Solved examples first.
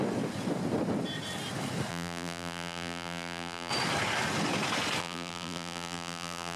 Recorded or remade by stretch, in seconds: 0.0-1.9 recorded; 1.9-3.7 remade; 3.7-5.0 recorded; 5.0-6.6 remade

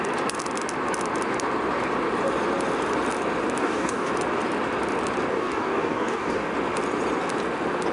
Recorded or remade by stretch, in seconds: 0.0-3.6 recorded; 3.6-4.1 remade; 4.1-5.3 recorded; 5.3-6.5 remade; 6.5-7.9 recorded

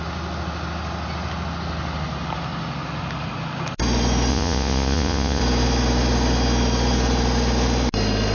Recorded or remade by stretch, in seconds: 0.0-4.3 recorded; 4.3-5.4 remade; 5.4-8.3 recorded

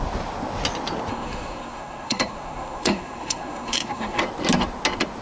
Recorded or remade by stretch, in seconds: 0.0-1.1 recorded; 1.1-4.2 remade; 4.2-5.2 recorded

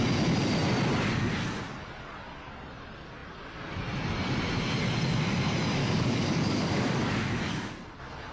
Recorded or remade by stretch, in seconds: 0.0-5.8 recorded; 5.8-7.7 remade; 7.7-8.3 recorded

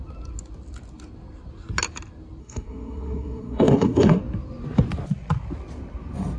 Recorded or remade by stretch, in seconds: 0.0-2.4 recorded; 2.4-4.2 remade; 4.2-6.4 recorded